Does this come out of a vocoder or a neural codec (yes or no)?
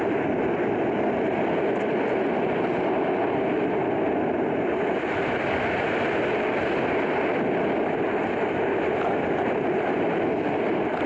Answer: no